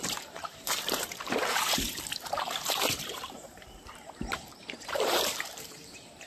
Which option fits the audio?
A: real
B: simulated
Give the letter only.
B